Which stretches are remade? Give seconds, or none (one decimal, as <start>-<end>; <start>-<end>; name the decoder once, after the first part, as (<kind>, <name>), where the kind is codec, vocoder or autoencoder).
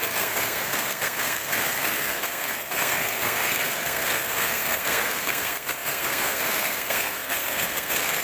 0.0-8.2 (codec, SNAC)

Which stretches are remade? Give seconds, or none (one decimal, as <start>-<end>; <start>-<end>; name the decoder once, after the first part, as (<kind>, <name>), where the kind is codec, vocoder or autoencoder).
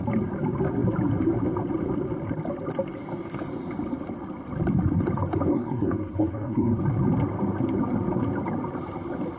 5.5-6.8 (codec, SNAC)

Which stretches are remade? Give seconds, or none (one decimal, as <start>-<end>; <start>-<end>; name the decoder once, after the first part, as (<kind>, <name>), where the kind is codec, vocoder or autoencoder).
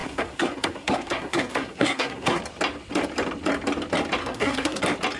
0.0-2.4 (codec, SNAC); 4.2-4.8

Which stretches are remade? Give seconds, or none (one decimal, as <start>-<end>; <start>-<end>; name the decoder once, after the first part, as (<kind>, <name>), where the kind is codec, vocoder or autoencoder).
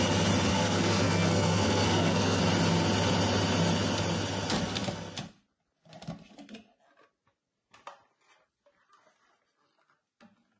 0.5-2.4 (codec, SNAC)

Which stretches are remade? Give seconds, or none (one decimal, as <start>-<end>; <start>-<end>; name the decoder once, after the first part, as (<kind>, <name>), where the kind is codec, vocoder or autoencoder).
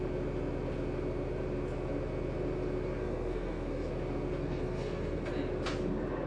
3.0-3.9 (codec, SNAC); 4.4-5.3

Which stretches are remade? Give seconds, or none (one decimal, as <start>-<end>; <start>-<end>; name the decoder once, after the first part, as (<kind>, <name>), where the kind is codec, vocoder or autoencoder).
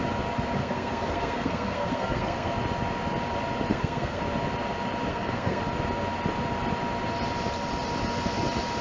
0.6-2.5 (codec, SNAC); 3.7-4.2; 5.1-5.6